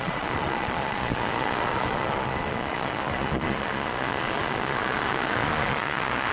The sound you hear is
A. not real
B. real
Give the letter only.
A